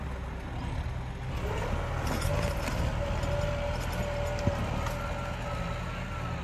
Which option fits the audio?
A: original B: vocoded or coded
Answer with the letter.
A